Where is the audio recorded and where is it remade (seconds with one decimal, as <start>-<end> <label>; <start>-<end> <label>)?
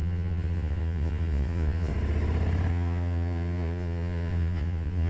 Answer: 0.0-1.9 remade; 1.9-2.7 recorded; 2.7-5.1 remade